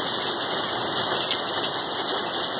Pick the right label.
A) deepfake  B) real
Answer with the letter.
B